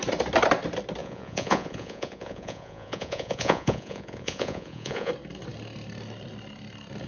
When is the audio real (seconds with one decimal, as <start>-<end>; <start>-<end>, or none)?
0.0-1.0; 5.1-7.1